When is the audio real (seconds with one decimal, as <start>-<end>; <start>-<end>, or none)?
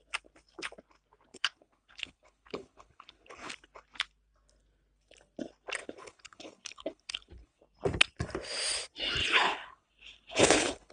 0.0-1.3; 3.5-5.8; 7.6-9.2